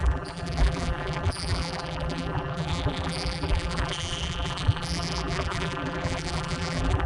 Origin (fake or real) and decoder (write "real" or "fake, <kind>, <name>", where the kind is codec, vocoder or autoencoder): fake, vocoder, BigVGAN v2